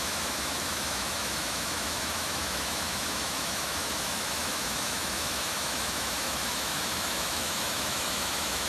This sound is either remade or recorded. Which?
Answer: remade